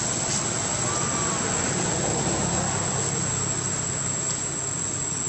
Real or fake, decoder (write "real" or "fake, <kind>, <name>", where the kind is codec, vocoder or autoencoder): real